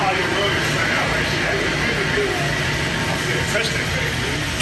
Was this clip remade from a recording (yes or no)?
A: no